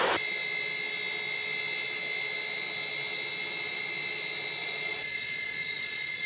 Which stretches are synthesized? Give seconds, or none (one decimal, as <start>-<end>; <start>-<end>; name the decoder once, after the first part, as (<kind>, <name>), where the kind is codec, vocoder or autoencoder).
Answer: 4.6-6.3 (vocoder, Vocos)